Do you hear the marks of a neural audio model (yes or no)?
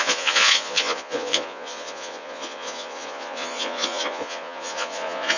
yes